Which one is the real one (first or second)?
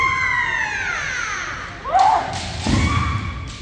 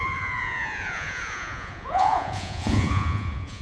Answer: first